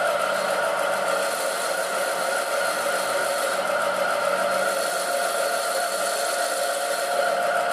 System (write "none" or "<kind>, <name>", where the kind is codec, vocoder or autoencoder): none